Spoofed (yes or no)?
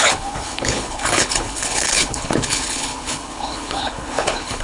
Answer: yes